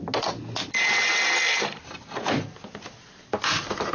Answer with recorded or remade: recorded